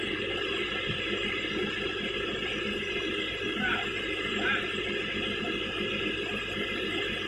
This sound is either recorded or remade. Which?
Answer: recorded